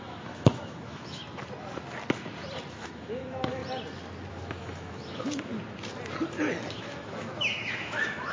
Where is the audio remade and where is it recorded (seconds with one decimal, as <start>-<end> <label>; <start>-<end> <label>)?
0.0-1.2 remade; 1.2-2.7 recorded; 2.7-3.6 remade; 3.6-4.3 recorded; 4.3-5.5 remade; 5.5-6.7 recorded; 6.7-8.3 remade